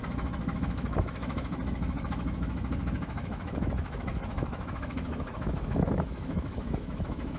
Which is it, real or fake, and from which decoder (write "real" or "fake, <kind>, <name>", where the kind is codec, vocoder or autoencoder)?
fake, autoencoder, DAC-VAE